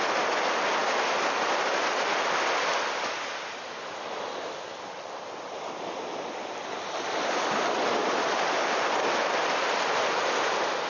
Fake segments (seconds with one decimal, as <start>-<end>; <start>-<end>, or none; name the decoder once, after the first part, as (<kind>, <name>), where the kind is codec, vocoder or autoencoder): none